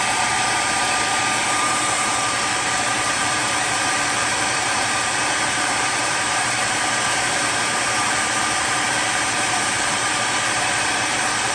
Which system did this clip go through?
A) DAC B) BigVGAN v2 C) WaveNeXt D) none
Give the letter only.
B